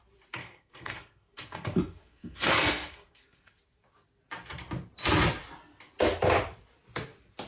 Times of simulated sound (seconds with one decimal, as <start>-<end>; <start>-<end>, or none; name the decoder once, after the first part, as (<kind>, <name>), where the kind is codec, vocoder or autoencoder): 0.4-3.5 (codec, SNAC)